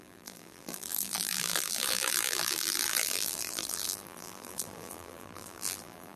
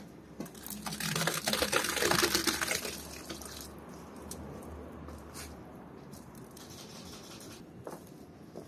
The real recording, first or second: second